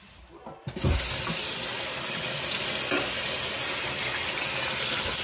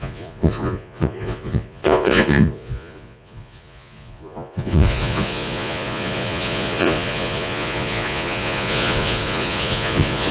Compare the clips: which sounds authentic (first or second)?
first